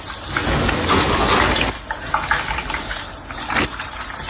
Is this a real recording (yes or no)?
yes